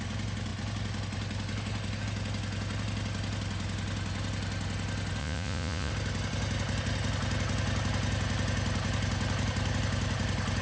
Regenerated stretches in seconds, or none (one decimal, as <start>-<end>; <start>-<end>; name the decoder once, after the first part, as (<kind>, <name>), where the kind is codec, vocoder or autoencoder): 5.2-5.9 (vocoder, Vocos)